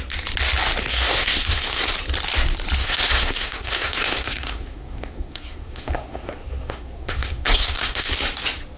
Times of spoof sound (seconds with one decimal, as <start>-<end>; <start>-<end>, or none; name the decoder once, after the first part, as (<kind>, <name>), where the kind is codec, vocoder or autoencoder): 0.9-1.9 (codec, SNAC); 2.8-8.1